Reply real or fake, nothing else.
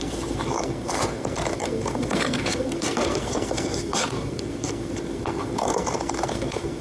fake